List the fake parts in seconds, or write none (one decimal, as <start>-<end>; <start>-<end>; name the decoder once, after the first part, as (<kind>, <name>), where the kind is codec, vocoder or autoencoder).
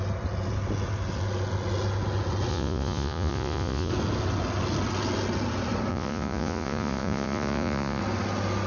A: 2.5-3.9 (vocoder, Vocos); 5.9-8.0